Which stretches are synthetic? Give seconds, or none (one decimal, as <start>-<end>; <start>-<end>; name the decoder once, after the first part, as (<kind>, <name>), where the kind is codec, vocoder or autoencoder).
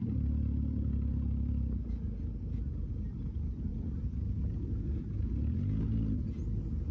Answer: none